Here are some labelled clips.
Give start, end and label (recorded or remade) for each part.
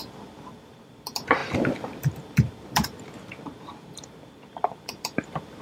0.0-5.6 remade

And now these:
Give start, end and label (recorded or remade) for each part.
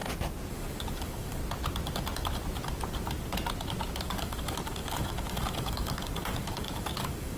0.0-0.5 recorded; 0.5-1.4 remade; 1.4-4.0 recorded; 4.0-7.4 remade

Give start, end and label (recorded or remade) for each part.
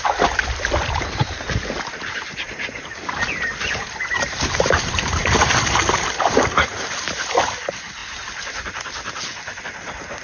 0.0-6.7 remade; 6.7-7.3 recorded; 7.3-8.0 remade; 8.0-9.6 recorded; 9.6-10.2 remade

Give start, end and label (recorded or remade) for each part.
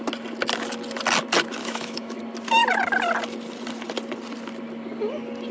0.0-1.6 recorded; 1.6-2.2 remade; 2.2-5.5 recorded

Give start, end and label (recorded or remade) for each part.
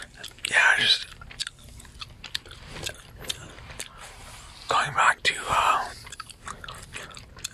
0.0-7.5 recorded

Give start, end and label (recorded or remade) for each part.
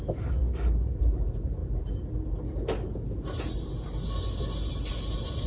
0.0-5.5 recorded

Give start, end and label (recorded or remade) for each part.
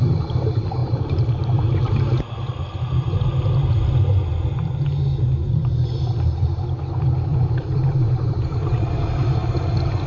0.0-0.8 recorded; 0.8-2.0 remade; 2.0-7.3 recorded; 7.3-8.8 remade; 8.8-10.1 recorded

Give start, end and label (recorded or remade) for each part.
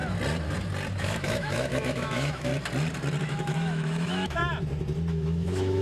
0.0-1.0 recorded; 1.0-2.5 remade; 2.5-3.2 recorded; 3.2-4.4 remade; 4.4-5.1 recorded; 5.1-5.8 remade